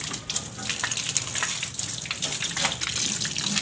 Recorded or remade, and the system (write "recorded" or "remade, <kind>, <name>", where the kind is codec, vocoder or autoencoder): recorded